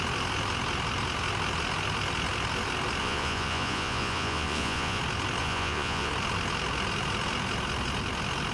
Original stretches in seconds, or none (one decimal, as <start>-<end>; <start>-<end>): 0.0-3.0; 5.0-5.4; 6.1-8.5